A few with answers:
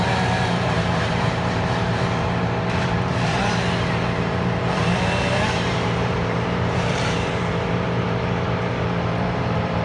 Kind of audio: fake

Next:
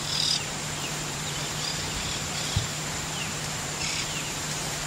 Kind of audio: fake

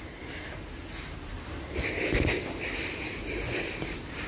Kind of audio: fake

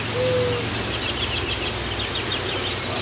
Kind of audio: real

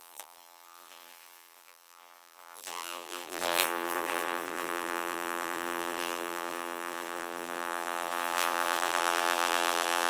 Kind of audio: fake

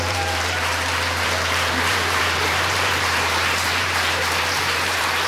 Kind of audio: fake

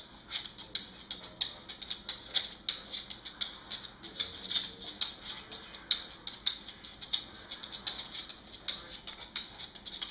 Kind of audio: real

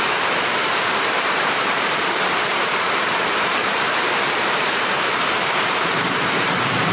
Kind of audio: fake